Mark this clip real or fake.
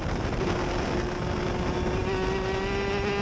real